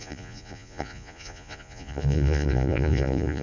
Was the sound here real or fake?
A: fake